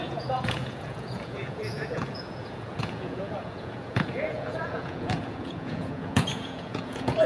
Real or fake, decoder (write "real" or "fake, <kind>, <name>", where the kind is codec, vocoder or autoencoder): fake, vocoder, Vocos